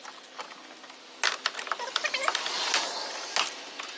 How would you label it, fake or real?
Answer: real